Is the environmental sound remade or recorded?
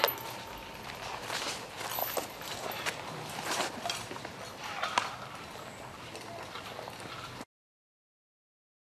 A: recorded